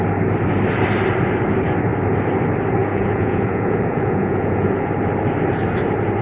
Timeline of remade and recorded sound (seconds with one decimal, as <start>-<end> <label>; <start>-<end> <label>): 0.0-2.8 recorded; 2.8-4.9 remade; 4.9-6.2 recorded